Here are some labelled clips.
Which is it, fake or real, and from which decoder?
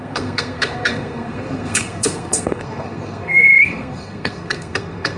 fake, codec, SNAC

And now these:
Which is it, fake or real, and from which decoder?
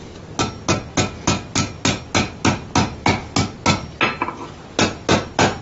real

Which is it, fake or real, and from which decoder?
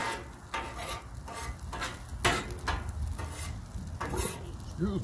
real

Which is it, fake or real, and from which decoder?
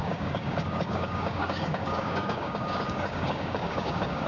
fake, codec, DAC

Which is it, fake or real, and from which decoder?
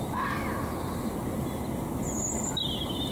real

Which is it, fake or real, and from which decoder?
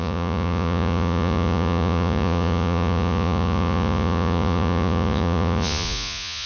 fake, vocoder, Vocos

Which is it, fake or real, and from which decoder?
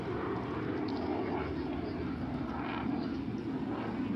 real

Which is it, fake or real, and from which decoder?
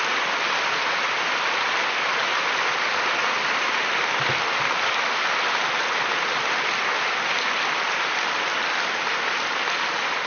real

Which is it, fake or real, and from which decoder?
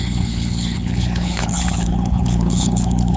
fake, codec, HILCodec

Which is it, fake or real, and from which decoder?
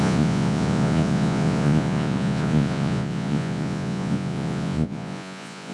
fake, vocoder, Vocos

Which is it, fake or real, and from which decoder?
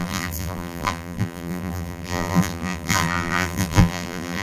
fake, vocoder, BigVGAN v2